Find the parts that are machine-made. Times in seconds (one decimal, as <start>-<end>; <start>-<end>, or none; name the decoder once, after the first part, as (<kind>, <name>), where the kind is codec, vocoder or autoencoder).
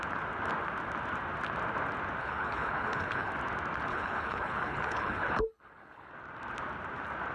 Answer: 2.2-3.3 (codec, HILCodec); 3.9-6.1